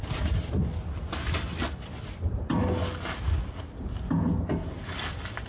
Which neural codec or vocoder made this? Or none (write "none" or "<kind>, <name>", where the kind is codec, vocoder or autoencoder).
none